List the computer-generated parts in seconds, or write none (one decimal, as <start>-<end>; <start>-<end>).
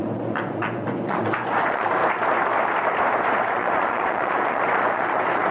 0.0-2.0; 3.4-5.5